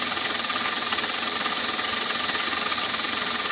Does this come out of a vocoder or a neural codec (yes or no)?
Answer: no